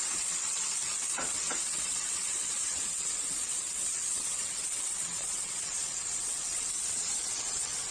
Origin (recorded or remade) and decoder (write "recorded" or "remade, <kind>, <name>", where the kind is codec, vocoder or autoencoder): remade, vocoder, WaveNeXt